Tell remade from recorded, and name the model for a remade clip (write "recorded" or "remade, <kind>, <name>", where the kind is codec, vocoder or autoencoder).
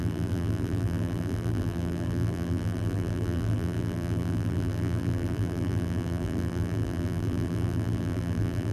remade, vocoder, BigVGAN v2